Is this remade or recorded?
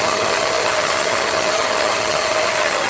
remade